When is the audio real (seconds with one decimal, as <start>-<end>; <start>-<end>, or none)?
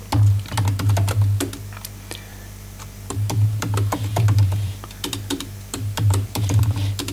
0.0-2.3; 6.6-7.1